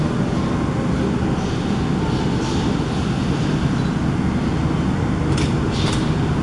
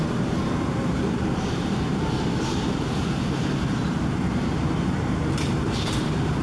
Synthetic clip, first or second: second